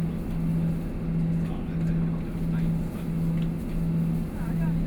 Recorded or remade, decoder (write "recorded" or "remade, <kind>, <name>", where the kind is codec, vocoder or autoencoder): recorded